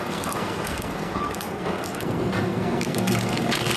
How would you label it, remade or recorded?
remade